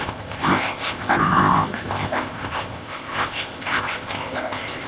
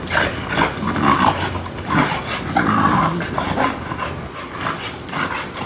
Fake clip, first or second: first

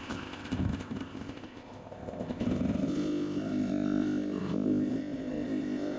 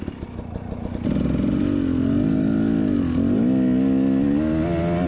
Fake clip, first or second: first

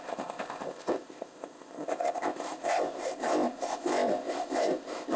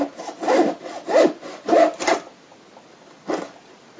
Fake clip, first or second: first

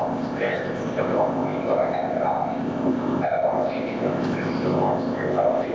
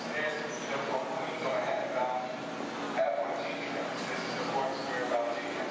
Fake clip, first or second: first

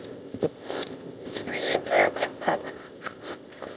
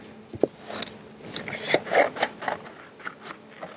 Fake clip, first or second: first